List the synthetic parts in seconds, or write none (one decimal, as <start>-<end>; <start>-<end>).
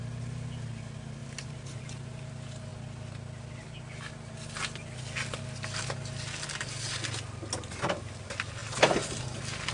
1.2-2.3